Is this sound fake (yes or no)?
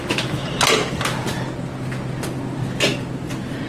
no